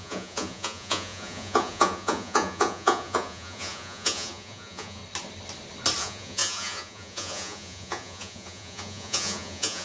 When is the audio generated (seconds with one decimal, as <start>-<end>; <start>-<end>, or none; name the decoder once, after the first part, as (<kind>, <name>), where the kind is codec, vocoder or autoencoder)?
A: 0.0-5.0 (vocoder, Vocos); 6.0-9.8